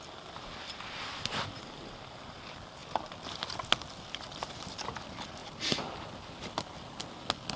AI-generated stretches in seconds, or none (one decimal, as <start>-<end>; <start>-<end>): none